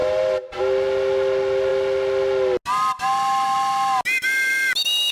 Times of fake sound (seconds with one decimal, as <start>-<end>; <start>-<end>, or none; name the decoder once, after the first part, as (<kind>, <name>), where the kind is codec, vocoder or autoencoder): none